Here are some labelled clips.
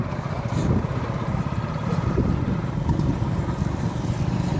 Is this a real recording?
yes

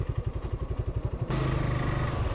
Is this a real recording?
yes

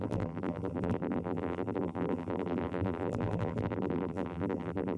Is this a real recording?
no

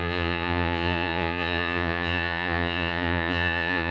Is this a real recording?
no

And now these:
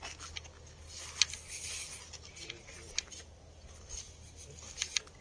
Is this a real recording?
yes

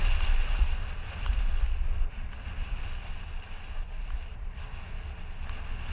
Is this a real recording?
yes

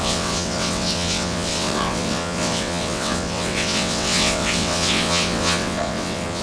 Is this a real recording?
no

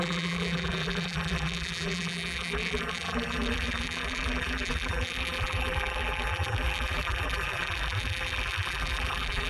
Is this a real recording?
no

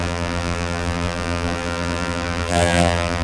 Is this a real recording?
no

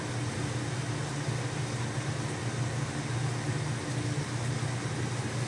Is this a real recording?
yes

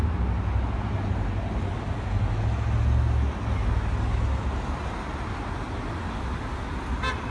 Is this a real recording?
yes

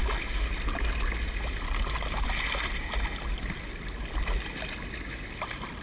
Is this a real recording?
yes